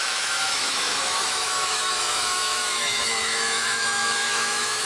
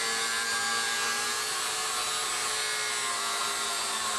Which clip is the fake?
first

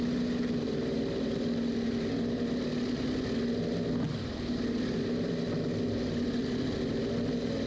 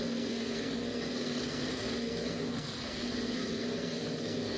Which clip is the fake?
second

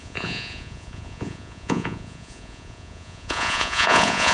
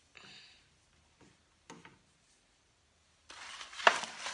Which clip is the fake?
first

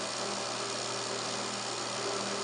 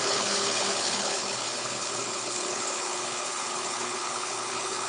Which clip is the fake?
second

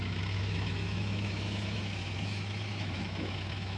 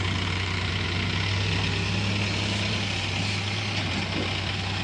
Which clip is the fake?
first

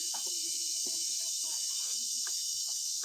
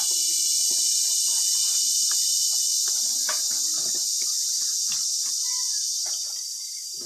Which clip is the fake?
first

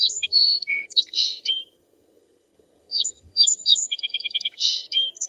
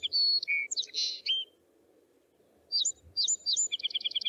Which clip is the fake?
first